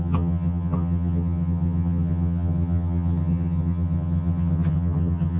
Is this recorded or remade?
remade